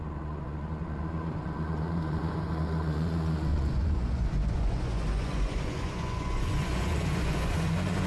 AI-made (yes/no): yes